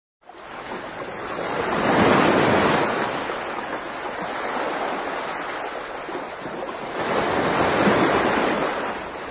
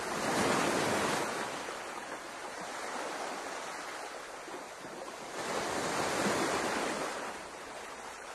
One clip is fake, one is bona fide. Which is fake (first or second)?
second